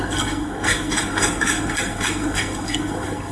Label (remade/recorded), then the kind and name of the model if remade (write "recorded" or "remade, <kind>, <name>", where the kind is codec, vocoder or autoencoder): remade, codec, SNAC